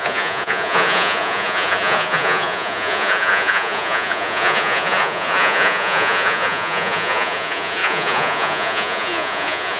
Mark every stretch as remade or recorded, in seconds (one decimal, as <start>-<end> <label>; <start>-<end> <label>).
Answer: 0.0-9.8 remade